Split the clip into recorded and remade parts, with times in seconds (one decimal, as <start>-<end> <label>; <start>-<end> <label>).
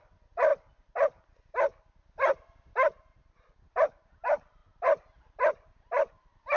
0.0-6.6 recorded